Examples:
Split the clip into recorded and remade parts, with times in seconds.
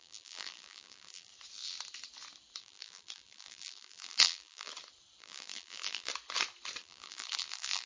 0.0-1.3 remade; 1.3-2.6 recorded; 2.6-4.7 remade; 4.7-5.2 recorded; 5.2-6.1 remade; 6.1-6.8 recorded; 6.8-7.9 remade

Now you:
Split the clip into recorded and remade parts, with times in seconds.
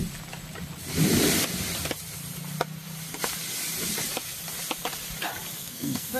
0.0-5.6 recorded; 5.6-6.2 remade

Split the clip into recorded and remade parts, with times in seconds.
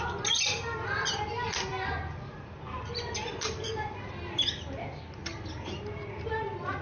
0.0-6.8 recorded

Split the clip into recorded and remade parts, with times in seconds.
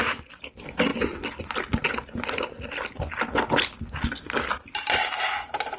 0.0-5.8 recorded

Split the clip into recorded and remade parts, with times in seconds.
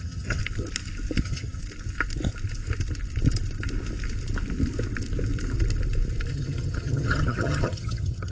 0.0-0.4 remade; 0.4-1.2 recorded; 1.2-1.6 remade; 1.6-6.3 recorded; 6.3-8.3 remade